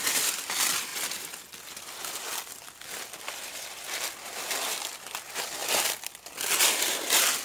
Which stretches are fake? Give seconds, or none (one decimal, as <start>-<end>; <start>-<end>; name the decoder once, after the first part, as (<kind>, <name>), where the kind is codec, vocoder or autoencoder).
none